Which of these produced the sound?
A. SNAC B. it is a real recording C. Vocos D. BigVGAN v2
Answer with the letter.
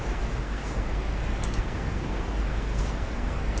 A